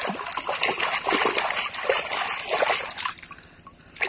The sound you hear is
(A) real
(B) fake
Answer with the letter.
A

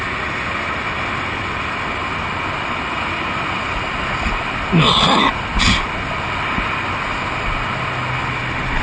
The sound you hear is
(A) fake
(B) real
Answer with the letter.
B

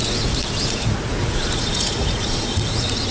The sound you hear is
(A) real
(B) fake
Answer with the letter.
B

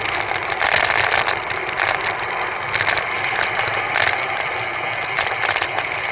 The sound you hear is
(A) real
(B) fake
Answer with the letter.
A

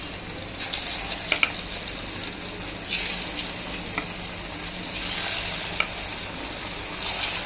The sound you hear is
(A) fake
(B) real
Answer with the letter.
B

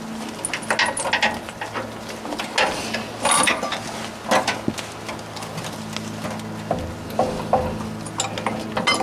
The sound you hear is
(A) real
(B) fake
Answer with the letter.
A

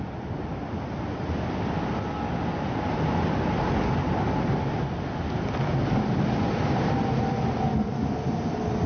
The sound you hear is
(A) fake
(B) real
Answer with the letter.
B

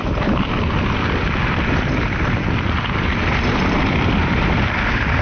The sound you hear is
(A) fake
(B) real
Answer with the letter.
B